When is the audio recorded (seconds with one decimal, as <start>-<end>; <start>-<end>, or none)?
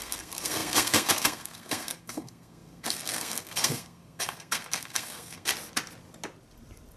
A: 5.5-7.0